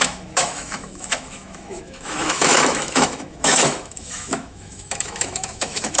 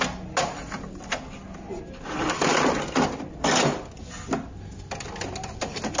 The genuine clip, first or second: second